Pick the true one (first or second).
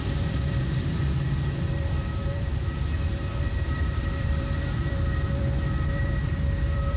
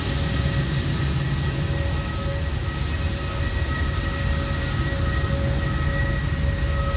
second